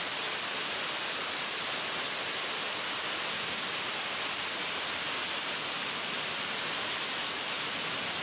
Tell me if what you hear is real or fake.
real